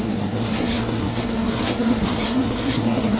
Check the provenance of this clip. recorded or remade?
remade